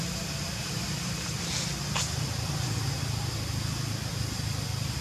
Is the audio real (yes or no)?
no